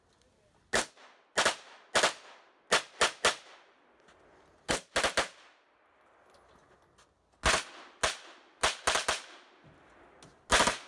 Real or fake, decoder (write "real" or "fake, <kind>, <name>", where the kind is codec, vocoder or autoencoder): real